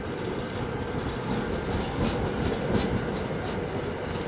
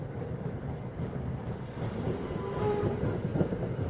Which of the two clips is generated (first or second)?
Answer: second